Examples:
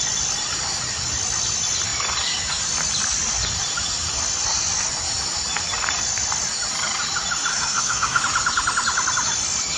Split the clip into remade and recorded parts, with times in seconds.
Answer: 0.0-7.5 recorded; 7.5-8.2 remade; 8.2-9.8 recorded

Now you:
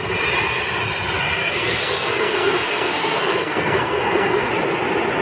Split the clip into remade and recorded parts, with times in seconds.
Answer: 0.0-1.4 recorded; 1.4-4.5 remade; 4.5-5.2 recorded

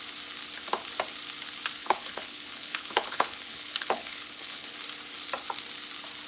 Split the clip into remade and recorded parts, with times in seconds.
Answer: 0.0-1.8 recorded; 1.8-4.7 remade; 4.7-6.3 recorded